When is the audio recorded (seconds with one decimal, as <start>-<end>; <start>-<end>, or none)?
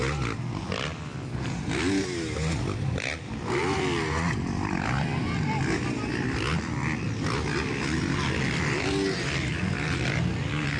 0.0-10.8